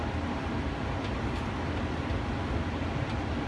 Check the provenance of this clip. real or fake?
real